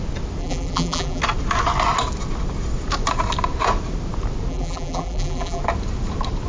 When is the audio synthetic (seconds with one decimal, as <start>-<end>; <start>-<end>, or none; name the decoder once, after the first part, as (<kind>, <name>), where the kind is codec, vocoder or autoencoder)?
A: 0.4-1.2 (vocoder, BigVGAN v2); 4.5-5.6